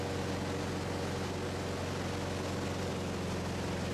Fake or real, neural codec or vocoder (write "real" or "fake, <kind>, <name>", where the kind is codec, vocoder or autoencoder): real